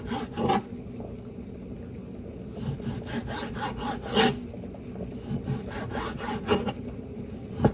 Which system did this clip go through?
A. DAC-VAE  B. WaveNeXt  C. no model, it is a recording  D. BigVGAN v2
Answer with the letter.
C